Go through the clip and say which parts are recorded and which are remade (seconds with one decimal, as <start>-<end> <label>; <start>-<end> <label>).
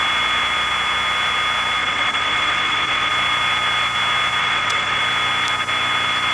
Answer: 0.0-1.8 recorded; 1.8-3.1 remade; 3.1-4.4 recorded; 4.4-5.0 remade; 5.0-6.3 recorded